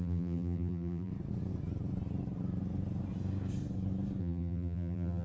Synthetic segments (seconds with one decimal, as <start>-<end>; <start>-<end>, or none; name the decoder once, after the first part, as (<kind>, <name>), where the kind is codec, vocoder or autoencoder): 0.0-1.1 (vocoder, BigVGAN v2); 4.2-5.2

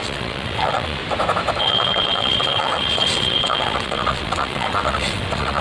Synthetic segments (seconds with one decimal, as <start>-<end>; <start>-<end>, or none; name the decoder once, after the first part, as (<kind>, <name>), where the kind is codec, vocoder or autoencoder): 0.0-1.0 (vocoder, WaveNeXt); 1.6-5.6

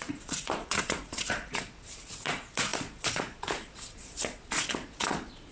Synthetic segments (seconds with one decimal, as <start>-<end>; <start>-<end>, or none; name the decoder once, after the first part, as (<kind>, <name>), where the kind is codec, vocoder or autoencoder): 0.0-5.5 (vocoder, Vocos)

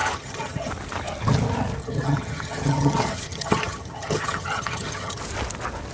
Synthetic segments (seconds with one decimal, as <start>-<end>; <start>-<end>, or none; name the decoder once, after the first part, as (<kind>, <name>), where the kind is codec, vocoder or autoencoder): 0.0-0.7 (vocoder, HiFi-GAN); 1.8-5.2

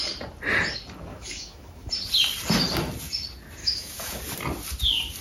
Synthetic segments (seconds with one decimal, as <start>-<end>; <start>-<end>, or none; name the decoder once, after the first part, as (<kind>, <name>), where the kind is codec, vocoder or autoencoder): 1.1-1.9 (autoencoder, DAC-VAE); 3.6-4.2